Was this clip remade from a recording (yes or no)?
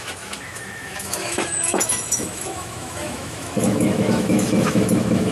yes